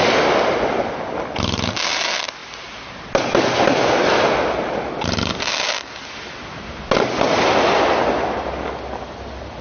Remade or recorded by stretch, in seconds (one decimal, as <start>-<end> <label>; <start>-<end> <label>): 0.0-9.6 recorded